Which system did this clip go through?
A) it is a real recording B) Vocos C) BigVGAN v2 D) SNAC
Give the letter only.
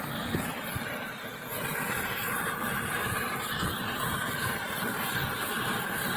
C